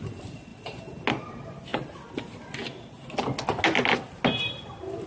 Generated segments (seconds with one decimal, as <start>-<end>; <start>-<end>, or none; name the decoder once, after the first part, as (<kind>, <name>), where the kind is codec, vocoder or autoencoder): none